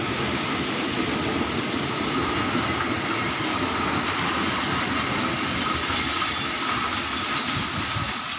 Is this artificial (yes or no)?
no